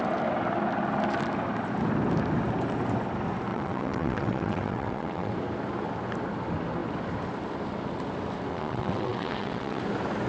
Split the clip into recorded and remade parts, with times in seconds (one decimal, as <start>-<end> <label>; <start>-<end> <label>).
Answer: 0.0-3.5 recorded; 3.5-5.3 remade; 5.3-8.5 recorded; 8.5-9.8 remade; 9.8-10.3 recorded